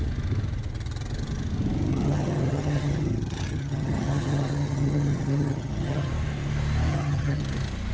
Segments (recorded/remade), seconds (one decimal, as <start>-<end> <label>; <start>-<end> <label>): 0.0-1.9 recorded; 1.9-6.1 remade; 6.1-6.9 recorded; 6.9-7.4 remade; 7.4-7.9 recorded